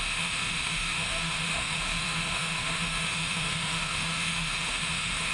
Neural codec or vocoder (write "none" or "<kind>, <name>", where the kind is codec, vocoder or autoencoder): autoencoder, DAC-VAE